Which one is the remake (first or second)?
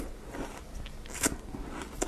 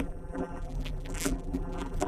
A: second